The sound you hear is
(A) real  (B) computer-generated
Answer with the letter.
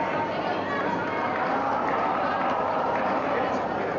A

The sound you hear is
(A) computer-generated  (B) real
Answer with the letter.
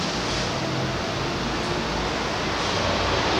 B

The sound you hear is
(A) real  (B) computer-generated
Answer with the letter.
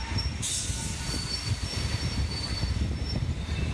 A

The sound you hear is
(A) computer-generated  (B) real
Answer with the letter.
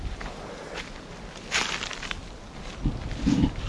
B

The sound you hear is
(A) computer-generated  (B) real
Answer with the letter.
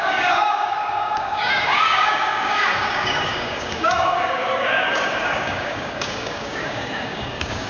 A